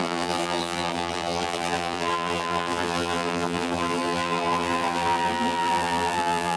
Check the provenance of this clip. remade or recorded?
remade